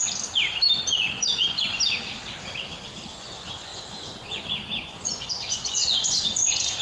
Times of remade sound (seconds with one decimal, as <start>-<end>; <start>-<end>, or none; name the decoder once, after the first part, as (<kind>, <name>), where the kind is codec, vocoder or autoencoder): 0.9-1.7 (vocoder, Vocos); 2.9-6.8